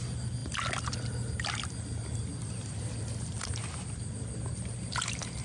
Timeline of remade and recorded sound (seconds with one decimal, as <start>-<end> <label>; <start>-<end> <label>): 0.0-2.4 recorded; 2.4-3.6 remade; 3.6-5.4 recorded